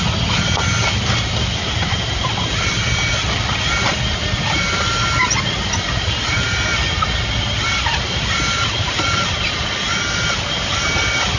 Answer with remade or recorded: recorded